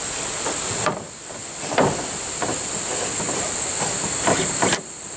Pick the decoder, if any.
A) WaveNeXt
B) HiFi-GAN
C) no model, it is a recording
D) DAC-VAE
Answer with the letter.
C